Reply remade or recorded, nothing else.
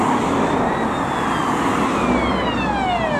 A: recorded